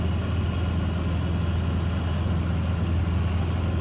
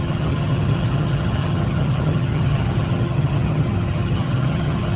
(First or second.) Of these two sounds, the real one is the first